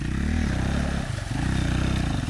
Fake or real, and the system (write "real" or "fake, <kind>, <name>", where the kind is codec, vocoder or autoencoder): real